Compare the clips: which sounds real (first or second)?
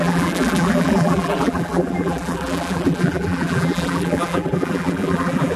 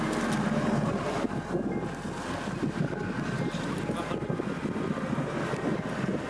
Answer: second